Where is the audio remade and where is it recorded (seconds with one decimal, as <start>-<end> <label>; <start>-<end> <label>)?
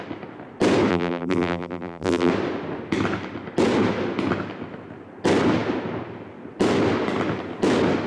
0.0-0.9 recorded; 0.9-2.3 remade; 2.3-8.1 recorded